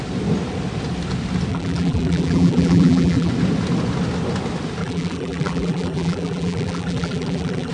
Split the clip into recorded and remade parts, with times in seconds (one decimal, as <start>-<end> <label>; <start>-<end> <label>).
0.0-1.5 recorded; 1.5-3.3 remade; 3.3-4.8 recorded; 4.8-7.7 remade